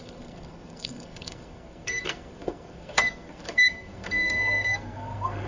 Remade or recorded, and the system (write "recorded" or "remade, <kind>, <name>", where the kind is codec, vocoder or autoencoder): remade, codec, SNAC